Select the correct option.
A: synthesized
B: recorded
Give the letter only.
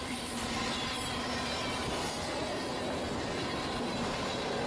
B